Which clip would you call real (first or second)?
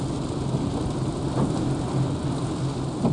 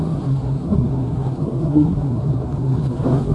first